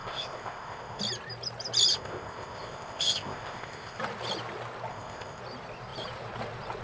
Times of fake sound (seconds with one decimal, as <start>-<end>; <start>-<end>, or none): 0.0-1.0; 1.9-4.0; 4.9-5.4